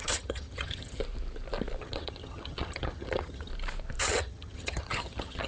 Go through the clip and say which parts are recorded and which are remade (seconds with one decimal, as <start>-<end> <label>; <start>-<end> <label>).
0.0-1.0 remade; 1.0-1.8 recorded; 1.8-3.5 remade; 3.5-4.0 recorded; 4.0-5.5 remade